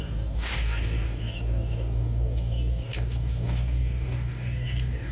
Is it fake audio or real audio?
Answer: fake